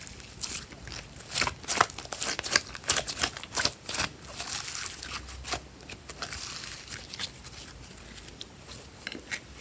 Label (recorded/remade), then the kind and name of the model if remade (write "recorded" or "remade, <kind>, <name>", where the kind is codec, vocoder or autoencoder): recorded